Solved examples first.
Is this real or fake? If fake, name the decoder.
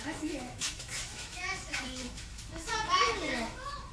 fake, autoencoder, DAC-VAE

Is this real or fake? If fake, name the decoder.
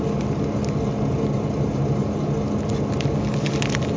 real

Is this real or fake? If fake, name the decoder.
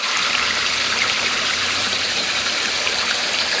fake, vocoder, BigVGAN v2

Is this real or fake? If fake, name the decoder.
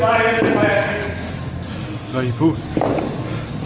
real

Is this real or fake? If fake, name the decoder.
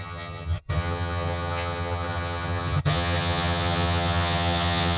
fake, vocoder, HiFi-GAN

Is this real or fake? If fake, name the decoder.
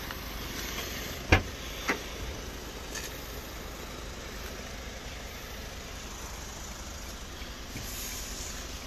real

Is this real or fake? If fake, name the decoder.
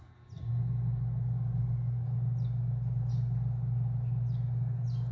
real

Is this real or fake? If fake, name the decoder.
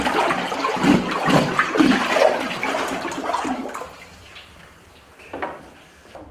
real